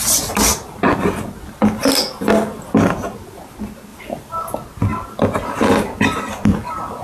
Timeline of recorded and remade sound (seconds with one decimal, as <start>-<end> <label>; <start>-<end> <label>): 0.0-3.9 recorded; 3.9-4.5 remade; 4.5-4.9 recorded; 4.9-6.0 remade; 6.0-7.0 recorded